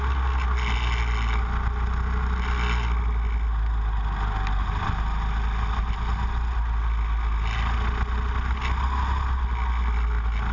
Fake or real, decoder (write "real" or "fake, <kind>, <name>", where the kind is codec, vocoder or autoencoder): real